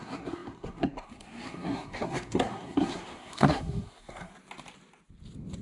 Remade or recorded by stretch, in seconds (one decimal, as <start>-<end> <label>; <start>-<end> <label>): 0.0-4.3 remade; 4.3-5.6 recorded